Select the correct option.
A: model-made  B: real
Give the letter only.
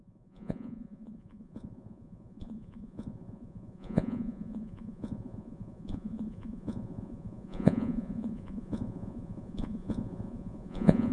A